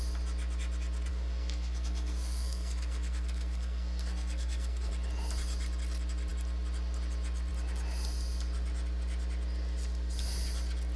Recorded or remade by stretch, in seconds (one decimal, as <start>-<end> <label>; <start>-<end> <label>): 0.0-1.1 recorded; 1.1-4.9 remade; 4.9-11.0 recorded